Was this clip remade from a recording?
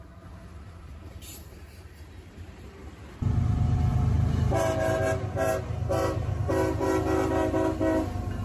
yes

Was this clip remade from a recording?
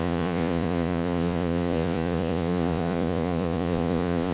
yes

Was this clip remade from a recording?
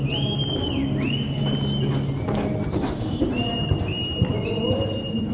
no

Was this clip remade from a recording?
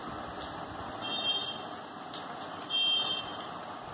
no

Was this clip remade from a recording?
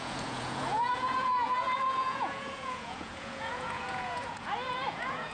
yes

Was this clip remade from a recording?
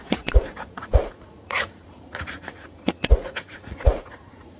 yes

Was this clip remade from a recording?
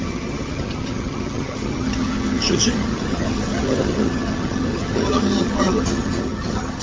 yes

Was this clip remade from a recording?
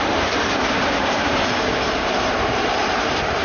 yes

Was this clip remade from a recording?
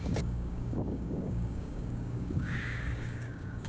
yes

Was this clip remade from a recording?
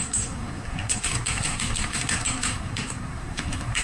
yes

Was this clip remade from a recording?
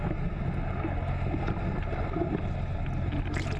no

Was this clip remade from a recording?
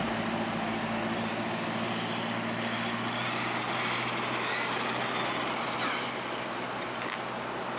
no